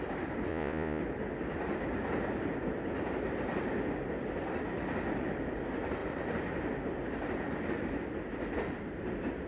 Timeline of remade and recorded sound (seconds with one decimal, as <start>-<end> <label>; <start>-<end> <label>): 0.0-0.5 recorded; 0.5-1.0 remade; 1.0-9.5 recorded